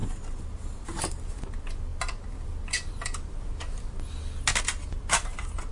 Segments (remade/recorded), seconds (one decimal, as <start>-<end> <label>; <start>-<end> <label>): 0.0-5.7 recorded